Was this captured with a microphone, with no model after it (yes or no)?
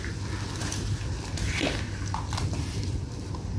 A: yes